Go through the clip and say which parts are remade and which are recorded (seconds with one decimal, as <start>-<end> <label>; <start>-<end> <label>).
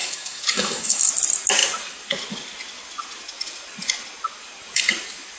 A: 0.0-1.1 remade; 1.1-5.4 recorded